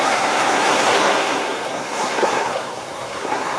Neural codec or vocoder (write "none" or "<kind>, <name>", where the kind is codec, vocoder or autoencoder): codec, SNAC